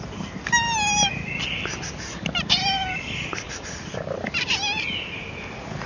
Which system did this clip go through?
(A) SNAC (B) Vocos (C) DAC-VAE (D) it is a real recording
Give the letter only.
D